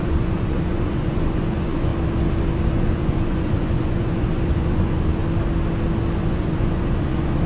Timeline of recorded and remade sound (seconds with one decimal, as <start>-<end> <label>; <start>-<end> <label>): 0.0-1.9 remade; 1.9-2.7 recorded; 2.7-5.2 remade; 5.2-6.2 recorded; 6.2-7.5 remade